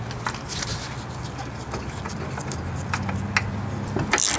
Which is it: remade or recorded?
recorded